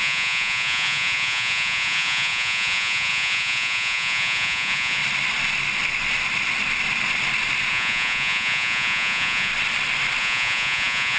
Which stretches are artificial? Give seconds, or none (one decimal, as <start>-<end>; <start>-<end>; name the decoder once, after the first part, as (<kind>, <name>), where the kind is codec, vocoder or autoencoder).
0.0-5.0 (vocoder, Vocos); 7.7-9.5; 10.2-11.2